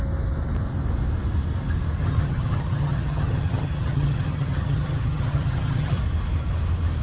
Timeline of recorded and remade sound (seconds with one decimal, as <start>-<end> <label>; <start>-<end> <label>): 0.0-2.0 recorded; 2.0-6.0 remade; 6.0-7.0 recorded